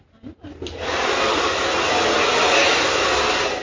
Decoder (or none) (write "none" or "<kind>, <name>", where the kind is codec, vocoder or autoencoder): none